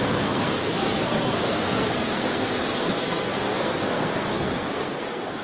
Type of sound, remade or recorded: remade